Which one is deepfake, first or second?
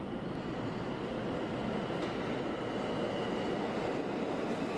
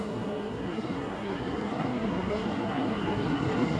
second